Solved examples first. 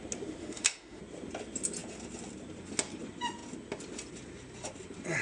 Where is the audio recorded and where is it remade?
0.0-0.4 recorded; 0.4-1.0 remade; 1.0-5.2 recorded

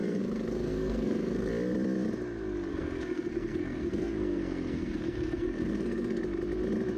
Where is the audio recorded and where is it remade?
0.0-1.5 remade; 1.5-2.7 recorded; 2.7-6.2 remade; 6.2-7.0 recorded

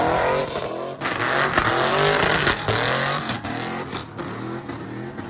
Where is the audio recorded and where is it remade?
0.0-5.3 recorded

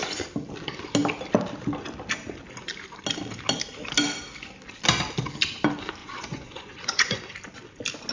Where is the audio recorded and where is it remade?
0.0-6.0 recorded; 6.0-7.2 remade; 7.2-8.1 recorded

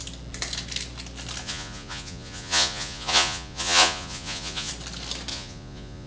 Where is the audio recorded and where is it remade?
0.0-1.4 recorded; 1.4-4.7 remade; 4.7-5.3 recorded; 5.3-6.1 remade

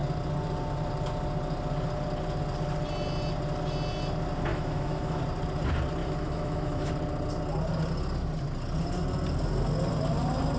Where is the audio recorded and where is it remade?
0.0-4.5 recorded; 4.5-5.2 remade; 5.2-6.0 recorded; 6.0-6.9 remade; 6.9-10.6 recorded